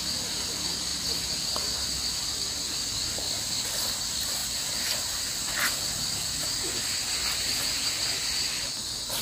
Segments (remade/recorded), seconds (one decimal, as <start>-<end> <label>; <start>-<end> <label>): 0.0-9.2 recorded